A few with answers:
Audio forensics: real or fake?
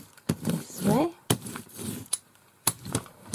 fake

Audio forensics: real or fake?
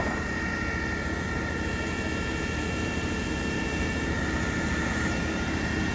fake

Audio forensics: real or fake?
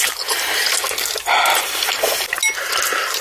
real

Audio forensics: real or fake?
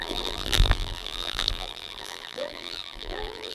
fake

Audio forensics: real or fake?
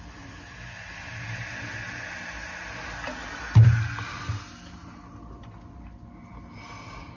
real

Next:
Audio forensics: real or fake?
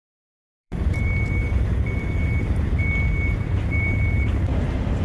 fake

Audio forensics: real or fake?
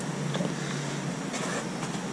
real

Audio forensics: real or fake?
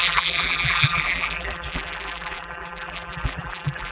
fake